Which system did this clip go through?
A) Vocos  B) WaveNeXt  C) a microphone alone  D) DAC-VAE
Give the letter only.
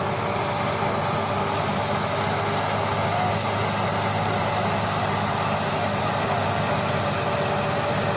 C